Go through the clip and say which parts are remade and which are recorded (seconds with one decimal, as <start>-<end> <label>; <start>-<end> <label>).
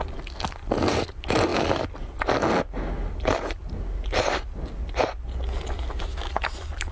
0.0-6.9 recorded